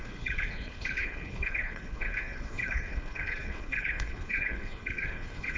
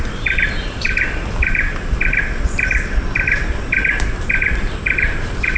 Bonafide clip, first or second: second